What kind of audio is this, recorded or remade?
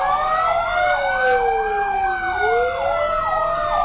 recorded